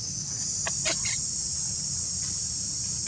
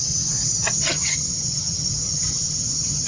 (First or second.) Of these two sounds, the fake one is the second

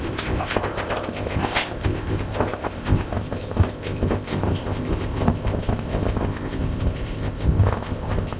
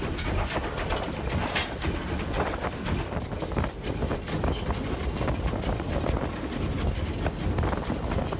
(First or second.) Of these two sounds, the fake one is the first